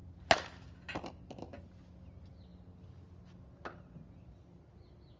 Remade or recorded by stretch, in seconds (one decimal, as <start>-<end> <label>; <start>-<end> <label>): 0.0-5.2 recorded

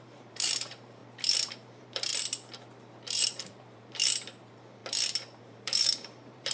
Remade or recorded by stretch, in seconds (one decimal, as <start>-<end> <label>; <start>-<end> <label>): 0.0-1.0 remade; 1.0-1.5 recorded; 1.5-2.1 remade; 2.1-2.8 recorded; 2.8-4.8 remade; 4.8-5.4 recorded; 5.4-6.5 remade